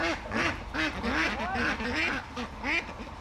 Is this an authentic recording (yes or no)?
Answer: yes